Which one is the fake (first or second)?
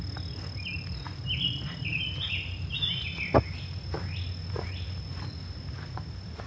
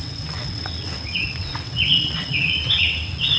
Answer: second